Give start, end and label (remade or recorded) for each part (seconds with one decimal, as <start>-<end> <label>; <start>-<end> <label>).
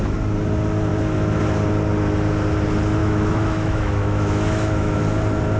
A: 0.0-0.9 recorded; 0.9-1.4 remade; 1.4-3.0 recorded; 3.0-5.0 remade; 5.0-5.6 recorded